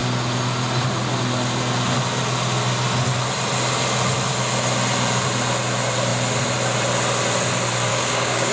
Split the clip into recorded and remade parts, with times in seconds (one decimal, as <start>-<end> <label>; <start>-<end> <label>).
0.0-7.9 recorded; 7.9-8.5 remade